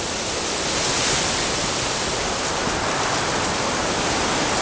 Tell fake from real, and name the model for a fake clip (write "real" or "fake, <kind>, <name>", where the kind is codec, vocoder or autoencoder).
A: real